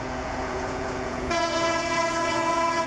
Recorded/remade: remade